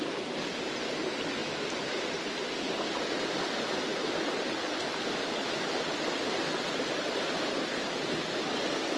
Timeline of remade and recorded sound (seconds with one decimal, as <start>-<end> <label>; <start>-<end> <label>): 0.0-9.0 recorded